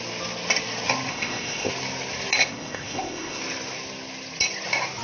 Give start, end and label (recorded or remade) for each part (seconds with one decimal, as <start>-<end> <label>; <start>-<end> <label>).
0.0-1.1 recorded; 1.1-1.7 remade; 1.7-2.4 recorded; 2.4-3.4 remade; 3.4-5.0 recorded